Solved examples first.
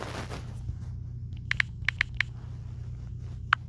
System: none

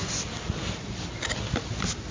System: none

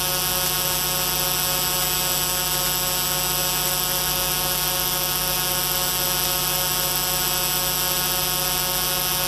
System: none